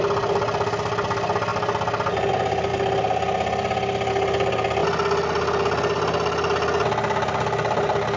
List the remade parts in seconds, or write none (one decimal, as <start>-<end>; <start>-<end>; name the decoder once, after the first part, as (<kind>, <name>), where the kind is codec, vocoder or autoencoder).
none